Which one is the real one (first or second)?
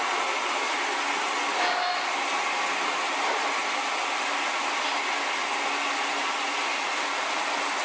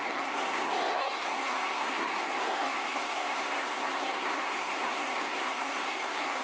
first